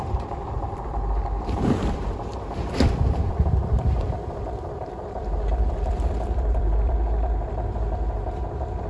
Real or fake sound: fake